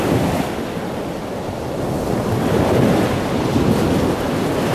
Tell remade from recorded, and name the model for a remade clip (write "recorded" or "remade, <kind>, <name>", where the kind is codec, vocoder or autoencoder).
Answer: recorded